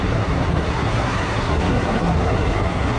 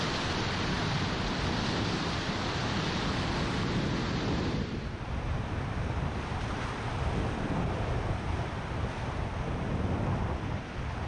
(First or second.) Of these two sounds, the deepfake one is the first